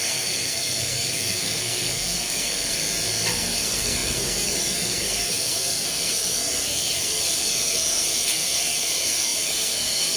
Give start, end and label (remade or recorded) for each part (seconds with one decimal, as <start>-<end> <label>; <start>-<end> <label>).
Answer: 0.0-2.8 remade; 2.8-3.3 recorded; 3.3-10.2 remade